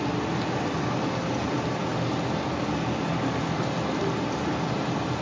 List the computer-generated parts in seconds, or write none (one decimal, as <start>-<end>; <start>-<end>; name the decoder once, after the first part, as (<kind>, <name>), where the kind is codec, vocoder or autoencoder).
none